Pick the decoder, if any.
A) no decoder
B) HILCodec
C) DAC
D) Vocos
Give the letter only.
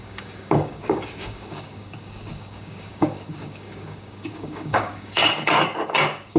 C